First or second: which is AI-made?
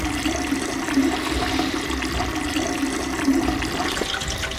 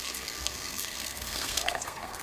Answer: second